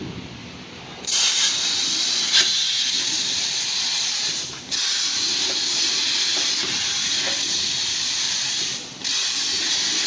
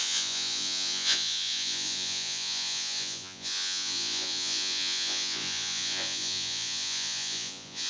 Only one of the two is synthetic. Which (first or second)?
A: second